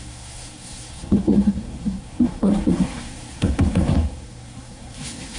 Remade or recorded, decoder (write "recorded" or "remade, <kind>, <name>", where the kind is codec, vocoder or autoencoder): remade, codec, SNAC